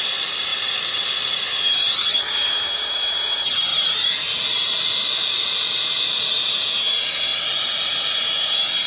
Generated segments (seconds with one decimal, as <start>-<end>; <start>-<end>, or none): 3.7-6.7; 7.3-7.9